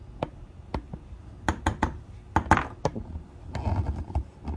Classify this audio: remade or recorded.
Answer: recorded